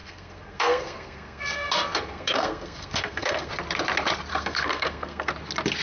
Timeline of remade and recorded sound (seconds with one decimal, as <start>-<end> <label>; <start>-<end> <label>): 0.0-3.5 remade; 3.5-4.3 recorded; 4.3-5.3 remade; 5.3-5.8 recorded